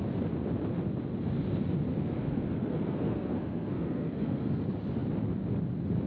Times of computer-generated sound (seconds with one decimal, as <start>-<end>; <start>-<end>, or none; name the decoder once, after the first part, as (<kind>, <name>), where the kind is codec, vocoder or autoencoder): 1.9-4.6 (codec, SNAC)